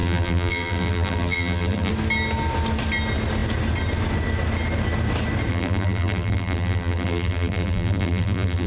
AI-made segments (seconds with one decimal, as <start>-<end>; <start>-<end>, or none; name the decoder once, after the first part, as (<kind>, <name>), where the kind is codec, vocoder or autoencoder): 0.0-1.9 (vocoder, BigVGAN v2); 5.5-8.7